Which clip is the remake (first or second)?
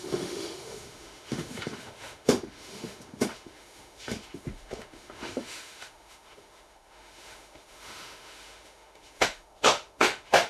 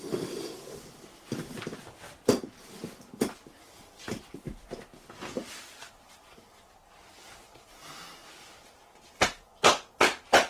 first